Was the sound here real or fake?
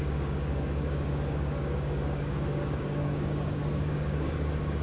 fake